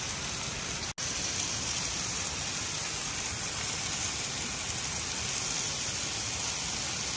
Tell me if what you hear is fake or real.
real